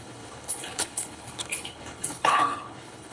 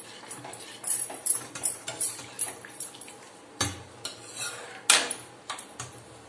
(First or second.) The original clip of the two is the second